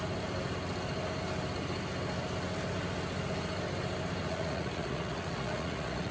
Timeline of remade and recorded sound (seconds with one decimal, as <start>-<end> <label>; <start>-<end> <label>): 0.0-4.2 recorded; 4.2-6.1 remade